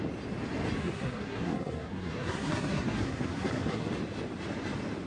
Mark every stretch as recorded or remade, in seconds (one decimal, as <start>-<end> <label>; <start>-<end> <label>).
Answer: 0.0-0.8 recorded; 0.8-3.9 remade; 3.9-5.1 recorded